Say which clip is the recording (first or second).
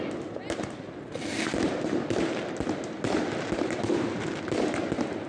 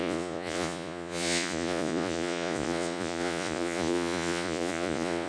first